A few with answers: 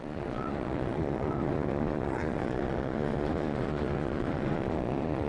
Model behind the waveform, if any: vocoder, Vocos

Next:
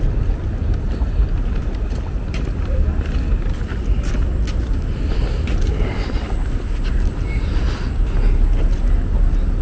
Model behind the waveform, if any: none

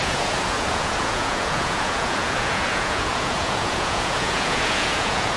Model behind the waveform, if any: vocoder, Vocos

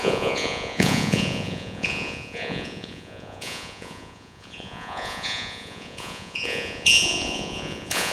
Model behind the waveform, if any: vocoder, Vocos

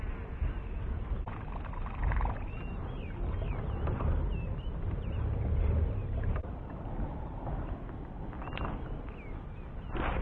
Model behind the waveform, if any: none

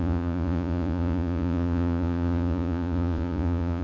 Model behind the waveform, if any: vocoder, Vocos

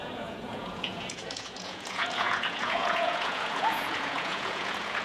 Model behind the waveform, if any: vocoder, Vocos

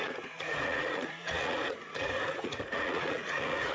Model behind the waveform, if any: vocoder, Vocos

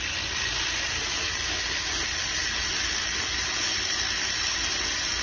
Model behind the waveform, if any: none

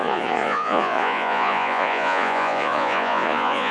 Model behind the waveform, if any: vocoder, Vocos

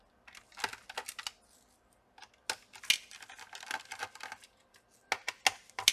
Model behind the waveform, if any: none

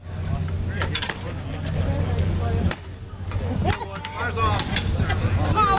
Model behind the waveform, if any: none